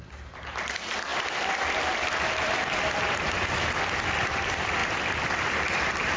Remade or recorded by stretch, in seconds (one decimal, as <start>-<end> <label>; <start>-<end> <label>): 0.0-1.1 recorded; 1.1-3.0 remade; 3.0-4.8 recorded; 4.8-5.4 remade; 5.4-6.2 recorded